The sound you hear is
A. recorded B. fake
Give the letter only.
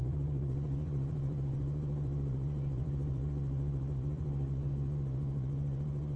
B